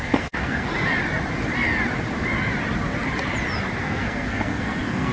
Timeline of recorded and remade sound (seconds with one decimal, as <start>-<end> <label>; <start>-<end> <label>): 0.0-0.7 remade; 0.7-3.8 recorded; 3.8-5.1 remade